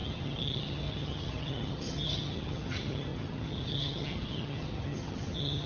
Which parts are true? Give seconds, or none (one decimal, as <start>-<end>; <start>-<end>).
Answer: none